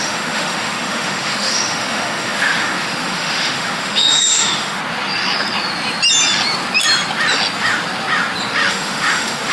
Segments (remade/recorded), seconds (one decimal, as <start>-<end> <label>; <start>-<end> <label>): 0.0-4.8 remade; 4.8-8.7 recorded; 8.7-9.5 remade